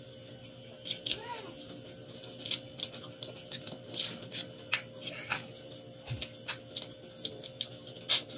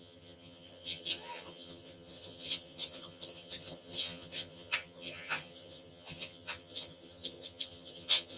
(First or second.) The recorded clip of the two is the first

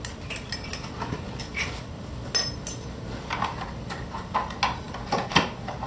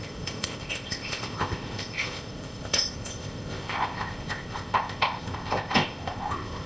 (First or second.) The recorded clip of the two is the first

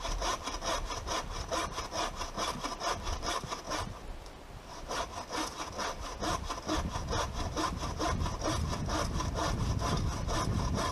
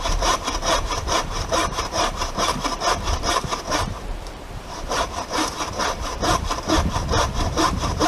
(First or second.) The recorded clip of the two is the first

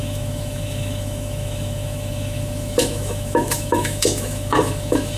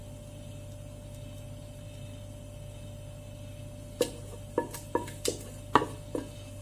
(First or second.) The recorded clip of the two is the second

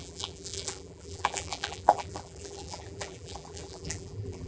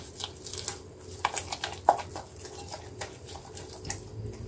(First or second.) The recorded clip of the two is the second